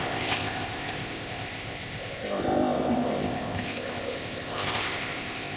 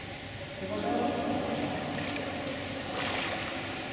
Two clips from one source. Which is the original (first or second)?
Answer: second